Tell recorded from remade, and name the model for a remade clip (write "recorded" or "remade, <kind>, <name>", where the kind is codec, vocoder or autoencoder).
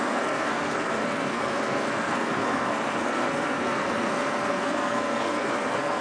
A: remade, codec, SNAC